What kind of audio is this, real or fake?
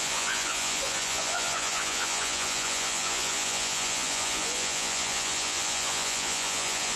fake